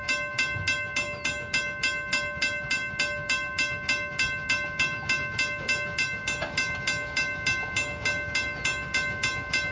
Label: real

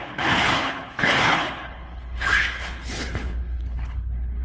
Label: fake